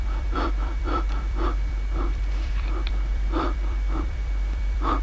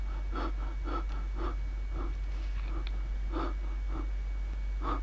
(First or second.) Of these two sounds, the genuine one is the second